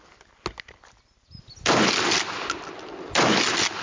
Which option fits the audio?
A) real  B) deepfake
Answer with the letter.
A